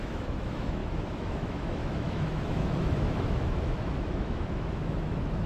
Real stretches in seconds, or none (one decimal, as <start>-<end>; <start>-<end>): none